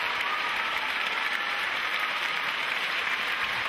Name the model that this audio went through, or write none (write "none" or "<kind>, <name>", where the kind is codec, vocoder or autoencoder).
vocoder, BigVGAN v2